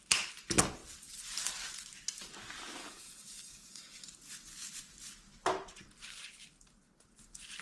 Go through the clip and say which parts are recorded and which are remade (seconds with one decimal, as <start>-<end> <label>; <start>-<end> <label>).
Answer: 0.0-2.8 recorded; 2.8-4.0 remade; 4.0-7.6 recorded